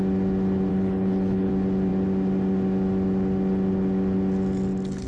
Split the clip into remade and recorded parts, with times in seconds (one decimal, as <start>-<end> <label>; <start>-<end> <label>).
0.0-0.7 recorded; 0.7-1.5 remade; 1.5-5.1 recorded